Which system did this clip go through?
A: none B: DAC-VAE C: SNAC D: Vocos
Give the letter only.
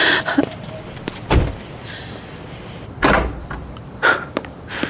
A